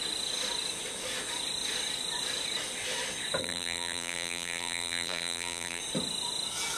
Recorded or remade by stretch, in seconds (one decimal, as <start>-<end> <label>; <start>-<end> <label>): 0.0-3.4 recorded; 3.4-5.8 remade; 5.8-6.8 recorded